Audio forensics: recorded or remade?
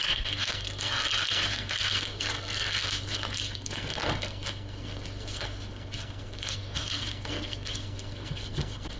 remade